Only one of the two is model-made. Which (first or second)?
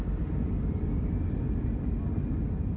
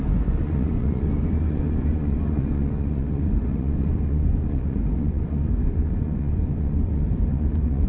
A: second